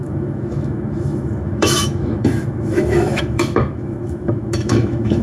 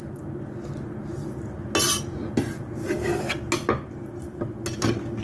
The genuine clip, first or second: second